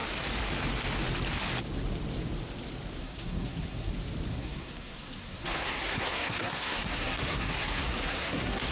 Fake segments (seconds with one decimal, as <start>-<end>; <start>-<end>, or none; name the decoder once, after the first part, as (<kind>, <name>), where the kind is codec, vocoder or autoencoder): 3.0-3.9 (codec, SNAC); 4.3-8.7